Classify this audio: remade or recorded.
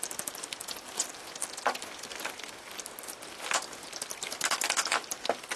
recorded